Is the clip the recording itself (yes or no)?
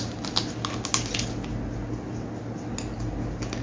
yes